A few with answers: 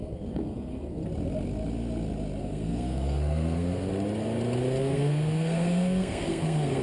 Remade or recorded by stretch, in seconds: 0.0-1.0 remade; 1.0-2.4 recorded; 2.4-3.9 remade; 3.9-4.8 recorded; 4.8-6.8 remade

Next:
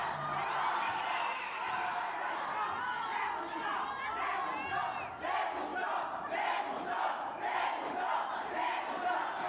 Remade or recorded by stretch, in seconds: 0.0-2.4 remade; 2.4-5.7 recorded; 5.7-9.1 remade; 9.1-9.5 recorded

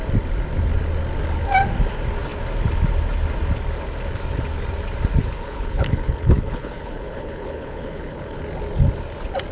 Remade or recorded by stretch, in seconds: 0.0-5.2 recorded; 5.2-8.4 remade; 8.4-9.5 recorded

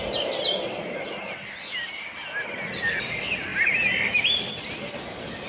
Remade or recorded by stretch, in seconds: 0.0-5.5 recorded